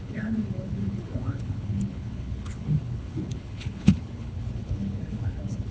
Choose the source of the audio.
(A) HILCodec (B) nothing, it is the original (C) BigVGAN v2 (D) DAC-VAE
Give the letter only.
A